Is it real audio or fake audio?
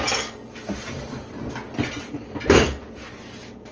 real